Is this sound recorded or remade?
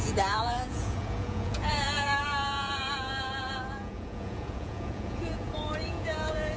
remade